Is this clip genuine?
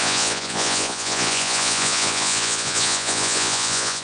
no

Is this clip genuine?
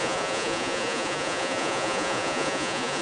no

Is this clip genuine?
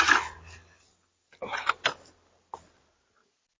yes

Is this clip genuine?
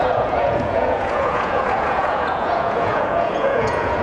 no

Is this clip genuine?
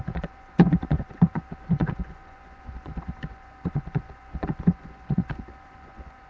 no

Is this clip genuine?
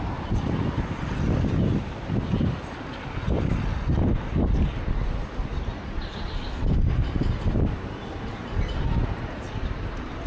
yes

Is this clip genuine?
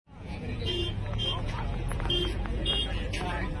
no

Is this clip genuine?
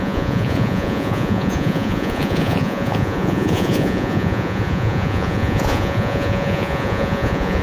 no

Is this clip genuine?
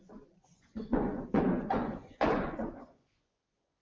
no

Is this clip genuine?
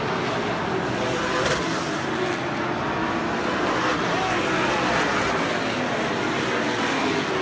yes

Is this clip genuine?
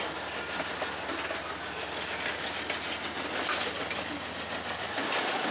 yes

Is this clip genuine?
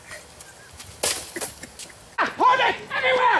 yes